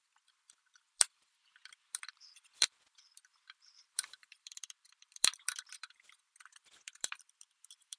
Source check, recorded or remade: remade